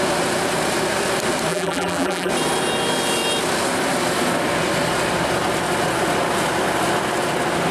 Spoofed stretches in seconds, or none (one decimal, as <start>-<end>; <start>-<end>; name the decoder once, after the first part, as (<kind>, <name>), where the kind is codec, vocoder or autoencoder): 1.5-2.3 (vocoder, BigVGAN v2)